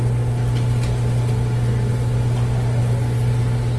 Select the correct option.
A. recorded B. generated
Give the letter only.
A